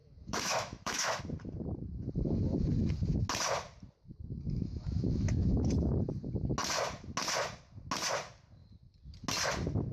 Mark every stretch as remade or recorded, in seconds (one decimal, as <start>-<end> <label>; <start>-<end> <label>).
0.0-1.2 remade; 1.2-4.1 recorded; 4.1-5.7 remade; 5.7-9.9 recorded